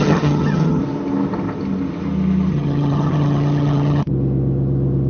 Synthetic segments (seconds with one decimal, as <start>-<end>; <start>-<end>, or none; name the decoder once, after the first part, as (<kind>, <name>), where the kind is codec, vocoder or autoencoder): 0.0-0.8 (vocoder, HiFi-GAN); 2.5-4.1